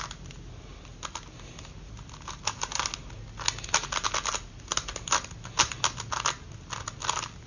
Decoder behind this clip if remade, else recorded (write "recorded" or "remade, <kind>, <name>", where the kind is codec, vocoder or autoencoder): recorded